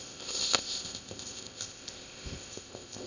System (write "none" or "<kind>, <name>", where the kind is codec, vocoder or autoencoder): codec, ZipCodec